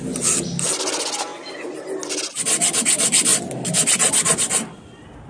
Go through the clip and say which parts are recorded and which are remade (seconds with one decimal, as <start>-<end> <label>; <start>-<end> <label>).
0.0-5.3 recorded